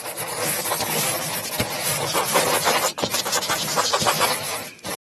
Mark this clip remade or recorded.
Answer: recorded